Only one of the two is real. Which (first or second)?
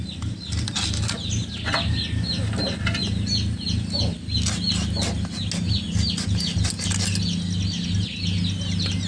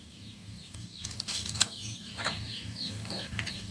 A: first